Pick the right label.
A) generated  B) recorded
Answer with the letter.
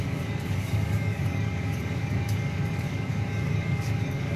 A